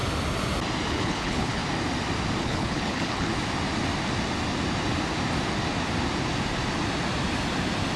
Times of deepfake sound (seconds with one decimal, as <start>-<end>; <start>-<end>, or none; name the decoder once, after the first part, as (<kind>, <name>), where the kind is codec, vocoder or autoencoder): 0.9-1.6 (codec, HILCodec); 2.4-3.3